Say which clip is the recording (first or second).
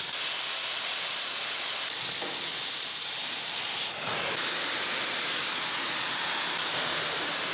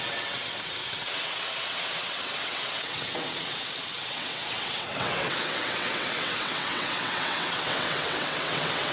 first